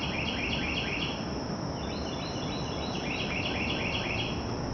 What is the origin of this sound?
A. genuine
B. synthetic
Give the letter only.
A